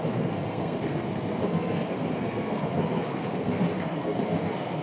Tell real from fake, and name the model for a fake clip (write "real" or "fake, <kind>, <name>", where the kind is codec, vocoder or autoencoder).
fake, codec, SNAC